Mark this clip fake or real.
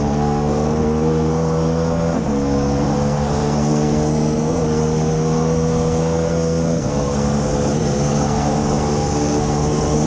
fake